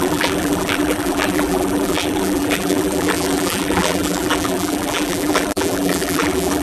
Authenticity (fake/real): fake